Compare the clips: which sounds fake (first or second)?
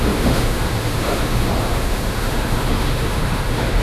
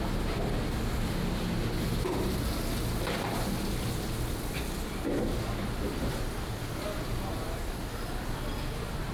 first